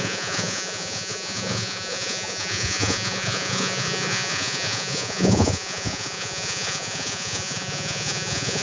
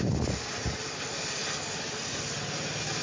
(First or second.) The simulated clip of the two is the first